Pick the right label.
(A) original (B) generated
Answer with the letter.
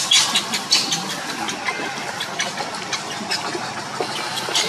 A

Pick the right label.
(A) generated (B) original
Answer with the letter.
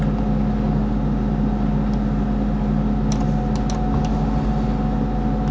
B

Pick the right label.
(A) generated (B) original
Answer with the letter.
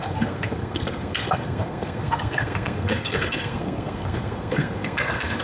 A